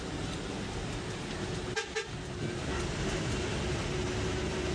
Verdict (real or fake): real